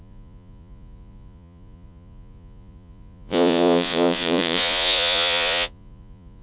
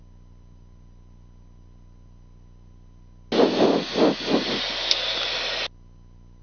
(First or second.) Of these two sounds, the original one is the second